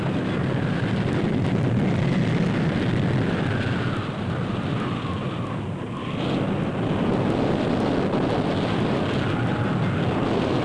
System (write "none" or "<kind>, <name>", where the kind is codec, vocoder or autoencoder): none